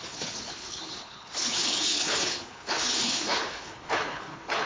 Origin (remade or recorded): remade